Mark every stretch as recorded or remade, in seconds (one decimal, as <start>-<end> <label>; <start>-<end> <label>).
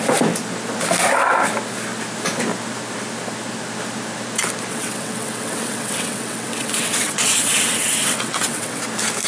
0.0-4.7 recorded; 4.7-8.8 remade; 8.8-9.3 recorded